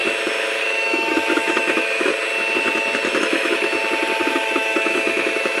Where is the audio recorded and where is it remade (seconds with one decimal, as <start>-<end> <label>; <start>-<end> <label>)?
0.0-0.6 recorded; 0.6-2.1 remade; 2.1-3.2 recorded; 3.2-3.7 remade; 3.7-4.3 recorded; 4.3-5.6 remade

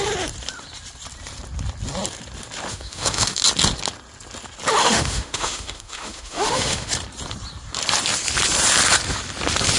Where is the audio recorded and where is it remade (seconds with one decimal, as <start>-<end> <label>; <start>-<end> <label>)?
0.0-2.7 recorded; 2.7-3.4 remade; 3.4-4.8 recorded; 4.8-6.9 remade; 6.9-9.8 recorded

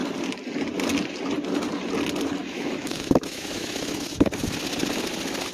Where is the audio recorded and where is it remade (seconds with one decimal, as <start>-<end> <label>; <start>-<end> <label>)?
0.0-2.4 recorded; 2.4-4.3 remade; 4.3-5.5 recorded

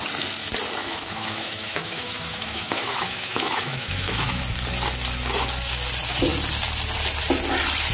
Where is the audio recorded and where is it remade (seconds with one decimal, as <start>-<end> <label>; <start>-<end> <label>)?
0.0-0.8 recorded; 0.8-4.4 remade; 4.4-7.9 recorded

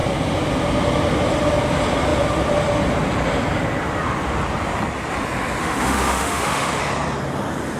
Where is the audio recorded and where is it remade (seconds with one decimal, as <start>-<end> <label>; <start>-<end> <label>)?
0.0-5.6 recorded; 5.6-6.8 remade; 6.8-7.8 recorded

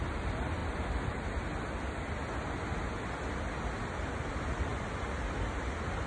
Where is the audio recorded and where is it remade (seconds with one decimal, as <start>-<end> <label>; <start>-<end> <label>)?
0.0-6.1 recorded

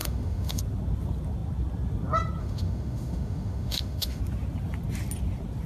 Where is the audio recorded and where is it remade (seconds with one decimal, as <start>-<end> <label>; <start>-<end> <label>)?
0.0-0.6 remade; 0.6-2.4 recorded; 2.4-4.2 remade; 4.2-5.7 recorded

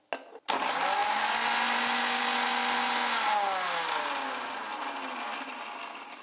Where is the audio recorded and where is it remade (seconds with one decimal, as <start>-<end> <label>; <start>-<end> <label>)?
0.0-6.2 recorded